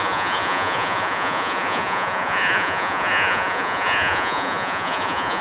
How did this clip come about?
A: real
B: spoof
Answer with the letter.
B